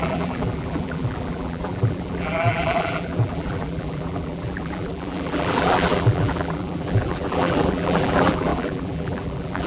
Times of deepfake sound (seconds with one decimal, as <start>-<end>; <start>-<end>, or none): 0.0-9.7